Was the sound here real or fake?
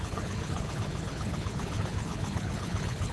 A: fake